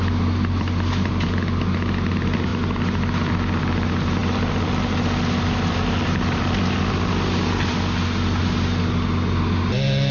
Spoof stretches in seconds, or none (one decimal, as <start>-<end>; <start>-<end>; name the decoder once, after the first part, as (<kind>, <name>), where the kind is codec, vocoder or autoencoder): none